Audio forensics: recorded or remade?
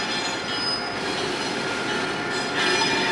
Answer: recorded